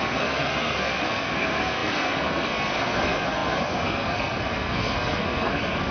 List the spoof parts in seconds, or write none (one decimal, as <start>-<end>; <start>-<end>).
0.0-5.9

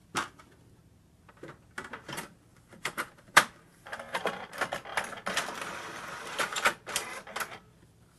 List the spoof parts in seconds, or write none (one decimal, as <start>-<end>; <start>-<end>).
2.5-4.3

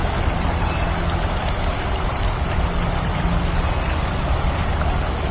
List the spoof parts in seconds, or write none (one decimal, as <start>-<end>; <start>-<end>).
none